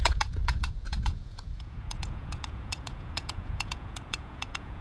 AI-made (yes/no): yes